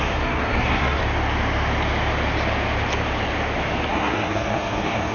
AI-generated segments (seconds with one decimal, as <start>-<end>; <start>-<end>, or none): 0.0-1.0; 3.9-5.1